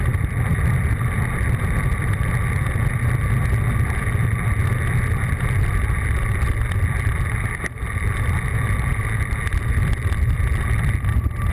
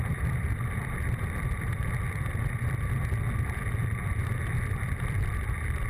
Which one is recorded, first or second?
first